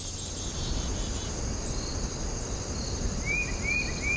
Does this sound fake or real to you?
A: real